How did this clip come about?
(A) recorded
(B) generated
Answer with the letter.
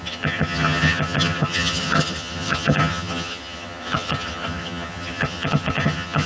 B